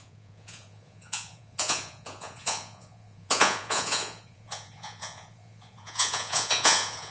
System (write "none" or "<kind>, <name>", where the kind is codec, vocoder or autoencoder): vocoder, Vocos